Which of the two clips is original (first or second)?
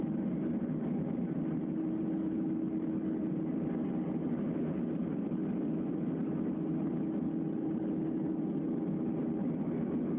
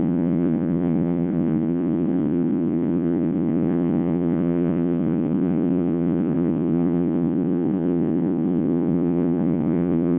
first